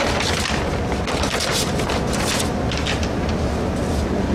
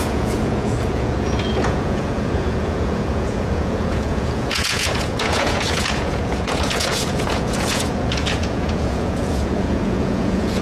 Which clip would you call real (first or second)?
first